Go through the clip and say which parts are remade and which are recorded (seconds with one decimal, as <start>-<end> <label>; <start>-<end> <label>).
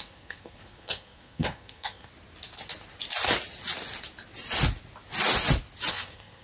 0.0-2.1 remade; 2.1-5.9 recorded; 5.9-6.4 remade